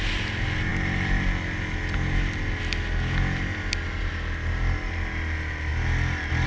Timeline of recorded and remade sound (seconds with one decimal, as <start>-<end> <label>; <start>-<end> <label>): 0.0-6.5 recorded